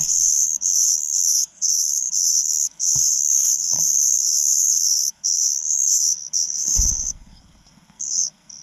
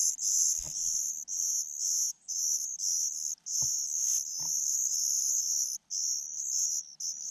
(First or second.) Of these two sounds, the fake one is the first